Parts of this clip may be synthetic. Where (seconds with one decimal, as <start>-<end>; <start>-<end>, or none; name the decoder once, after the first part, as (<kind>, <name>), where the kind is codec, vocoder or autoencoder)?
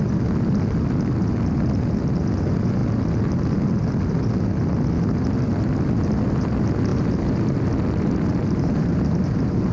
8.4-9.7 (vocoder, BigVGAN v2)